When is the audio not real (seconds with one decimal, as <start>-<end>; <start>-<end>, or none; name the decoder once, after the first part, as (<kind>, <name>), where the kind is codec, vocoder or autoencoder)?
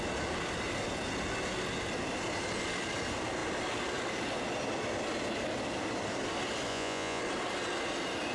6.7-7.2 (vocoder, Vocos)